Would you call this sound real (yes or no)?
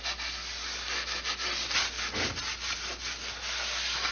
yes